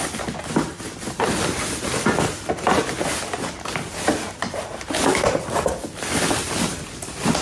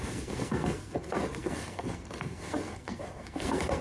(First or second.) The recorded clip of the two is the first